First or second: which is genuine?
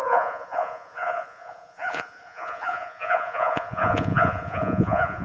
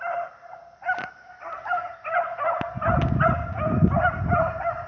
second